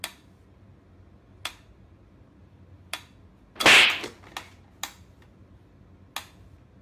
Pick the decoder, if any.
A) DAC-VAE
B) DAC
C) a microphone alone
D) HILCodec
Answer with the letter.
C